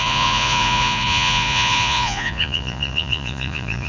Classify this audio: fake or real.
fake